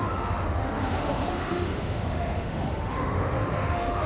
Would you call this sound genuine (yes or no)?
no